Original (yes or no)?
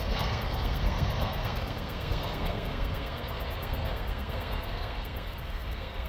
no